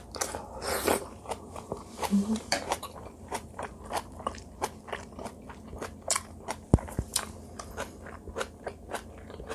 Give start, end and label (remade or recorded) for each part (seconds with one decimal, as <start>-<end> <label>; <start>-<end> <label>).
0.0-0.8 recorded; 0.8-3.7 remade; 3.7-9.5 recorded